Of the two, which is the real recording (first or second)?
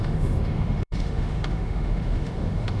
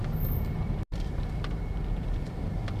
second